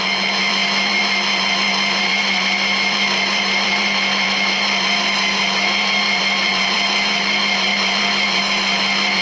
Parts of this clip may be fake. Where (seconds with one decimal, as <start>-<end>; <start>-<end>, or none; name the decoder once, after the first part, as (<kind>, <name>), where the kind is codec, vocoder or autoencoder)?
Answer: 0.0-9.2 (vocoder, BigVGAN v2)